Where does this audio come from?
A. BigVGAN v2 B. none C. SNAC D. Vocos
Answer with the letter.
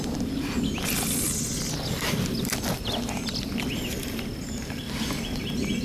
B